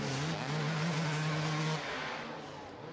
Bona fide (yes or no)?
yes